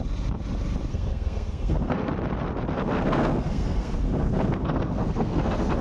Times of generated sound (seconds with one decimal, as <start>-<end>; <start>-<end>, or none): 0.9-2.1; 2.7-5.8